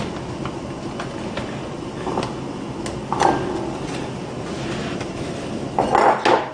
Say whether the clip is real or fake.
real